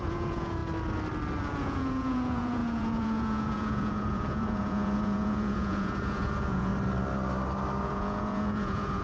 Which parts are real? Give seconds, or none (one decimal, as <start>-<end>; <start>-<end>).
0.6-1.4; 6.7-7.8